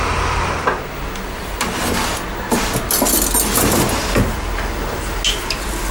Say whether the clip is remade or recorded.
recorded